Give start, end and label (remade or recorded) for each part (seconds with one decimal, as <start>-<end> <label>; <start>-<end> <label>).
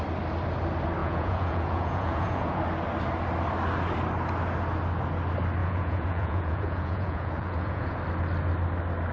0.0-1.0 recorded; 1.0-2.6 remade; 2.6-5.6 recorded; 5.6-8.0 remade; 8.0-9.1 recorded